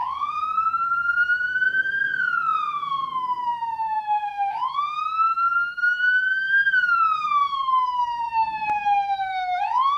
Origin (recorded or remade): remade